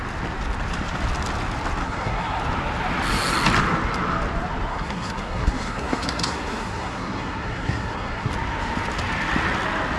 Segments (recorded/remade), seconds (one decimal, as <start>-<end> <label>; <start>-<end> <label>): 0.0-1.8 recorded; 1.8-2.4 remade; 2.4-4.7 recorded; 4.7-8.3 remade; 8.3-10.0 recorded